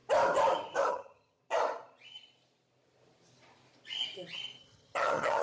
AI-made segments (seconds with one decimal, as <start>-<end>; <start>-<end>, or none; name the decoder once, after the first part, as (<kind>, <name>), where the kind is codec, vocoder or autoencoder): 0.9-1.4 (vocoder, HiFi-GAN); 4.6-5.4